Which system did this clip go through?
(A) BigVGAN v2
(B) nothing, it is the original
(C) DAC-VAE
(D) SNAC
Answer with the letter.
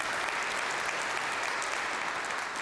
B